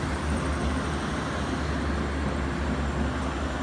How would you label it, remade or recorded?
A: recorded